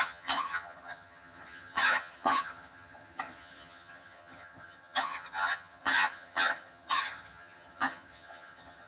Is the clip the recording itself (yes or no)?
no